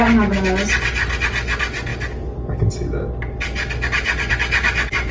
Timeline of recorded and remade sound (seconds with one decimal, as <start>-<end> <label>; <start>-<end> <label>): 0.0-5.1 recorded